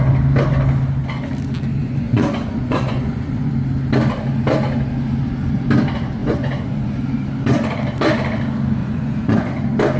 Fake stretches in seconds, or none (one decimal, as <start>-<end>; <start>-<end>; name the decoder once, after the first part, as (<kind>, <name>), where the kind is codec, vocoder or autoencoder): 1.8-3.5 (vocoder, Vocos); 6.2-7.0; 8.8-9.5